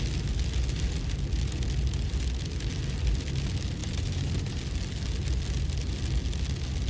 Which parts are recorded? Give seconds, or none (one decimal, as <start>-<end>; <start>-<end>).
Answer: 0.0-3.8; 4.6-6.9